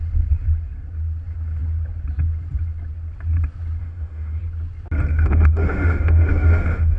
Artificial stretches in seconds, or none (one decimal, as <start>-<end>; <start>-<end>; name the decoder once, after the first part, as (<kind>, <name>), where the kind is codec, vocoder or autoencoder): 3.8-4.4 (autoencoder, DAC-VAE); 5.1-7.0